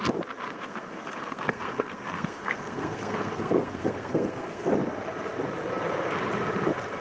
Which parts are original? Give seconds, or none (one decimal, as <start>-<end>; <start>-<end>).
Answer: 0.0-0.5; 4.7-7.0